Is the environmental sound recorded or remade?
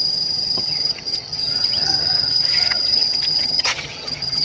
remade